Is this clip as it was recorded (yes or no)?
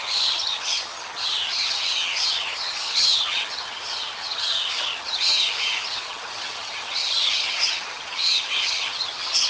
no